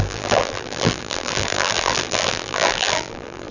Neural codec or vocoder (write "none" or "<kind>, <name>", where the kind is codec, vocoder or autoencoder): vocoder, BigVGAN v2